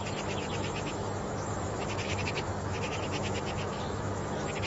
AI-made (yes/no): yes